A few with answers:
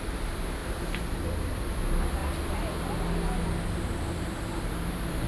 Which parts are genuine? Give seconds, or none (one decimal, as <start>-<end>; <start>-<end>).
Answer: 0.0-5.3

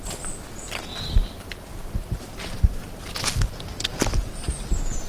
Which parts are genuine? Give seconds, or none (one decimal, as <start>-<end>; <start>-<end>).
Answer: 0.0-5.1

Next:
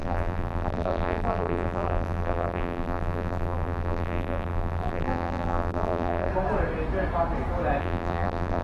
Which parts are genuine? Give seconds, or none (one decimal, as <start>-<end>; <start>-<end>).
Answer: 6.3-7.8

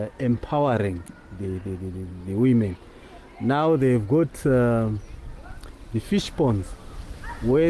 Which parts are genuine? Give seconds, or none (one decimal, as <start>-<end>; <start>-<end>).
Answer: 0.0-7.7

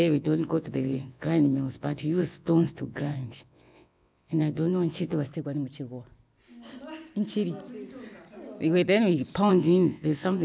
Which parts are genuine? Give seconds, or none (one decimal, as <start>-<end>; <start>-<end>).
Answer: 5.3-9.5

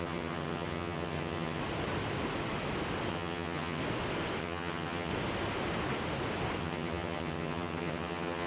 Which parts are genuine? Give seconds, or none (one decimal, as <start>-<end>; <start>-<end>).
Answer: 1.6-3.1; 3.8-4.4; 5.1-6.6